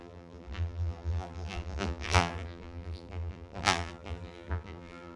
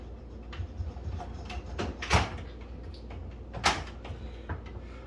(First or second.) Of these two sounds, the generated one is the first